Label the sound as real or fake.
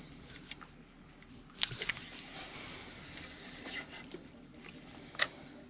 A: real